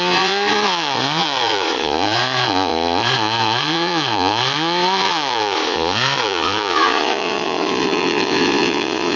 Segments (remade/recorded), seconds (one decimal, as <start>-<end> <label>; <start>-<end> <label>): 0.0-9.2 remade